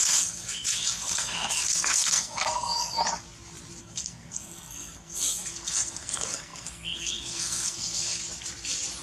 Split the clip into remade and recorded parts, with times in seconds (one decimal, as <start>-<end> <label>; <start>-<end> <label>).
0.0-3.0 remade; 3.0-3.8 recorded; 3.8-8.2 remade; 8.2-9.0 recorded